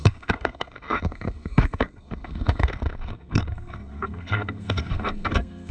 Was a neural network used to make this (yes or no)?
yes